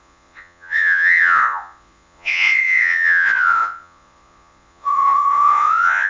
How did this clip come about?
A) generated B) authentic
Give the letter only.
A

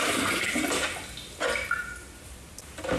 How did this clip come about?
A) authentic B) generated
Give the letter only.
A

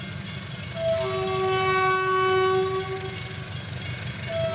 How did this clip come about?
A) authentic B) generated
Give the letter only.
A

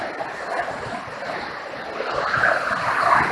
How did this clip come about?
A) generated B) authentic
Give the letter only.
B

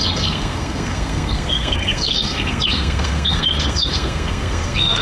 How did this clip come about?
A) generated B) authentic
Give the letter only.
A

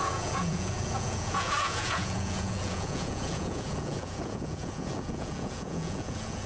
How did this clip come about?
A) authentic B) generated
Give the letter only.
B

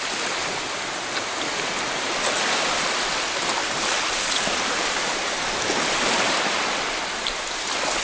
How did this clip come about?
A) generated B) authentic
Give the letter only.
B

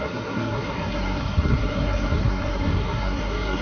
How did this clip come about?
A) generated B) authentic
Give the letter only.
A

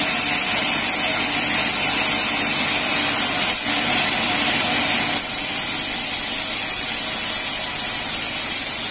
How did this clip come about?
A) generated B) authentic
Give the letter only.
B